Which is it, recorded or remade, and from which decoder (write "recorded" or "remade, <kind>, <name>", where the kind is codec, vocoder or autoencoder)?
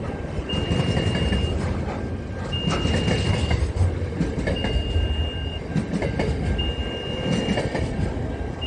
recorded